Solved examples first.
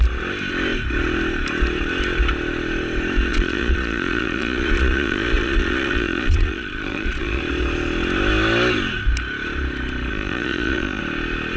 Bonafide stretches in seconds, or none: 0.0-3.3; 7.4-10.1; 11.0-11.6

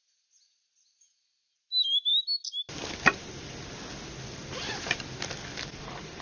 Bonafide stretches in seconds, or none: 0.0-6.2